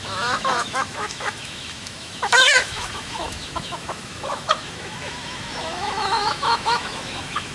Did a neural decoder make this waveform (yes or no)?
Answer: yes